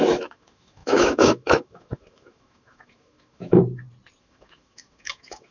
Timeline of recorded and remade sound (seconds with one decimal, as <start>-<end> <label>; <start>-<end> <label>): 0.0-3.6 remade; 3.6-4.2 recorded; 4.2-5.5 remade